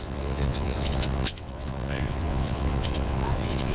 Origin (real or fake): fake